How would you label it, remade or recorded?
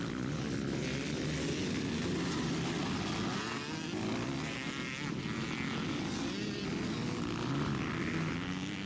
recorded